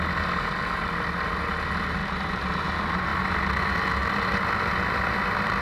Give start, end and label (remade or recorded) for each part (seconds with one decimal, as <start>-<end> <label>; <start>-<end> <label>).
0.0-5.6 recorded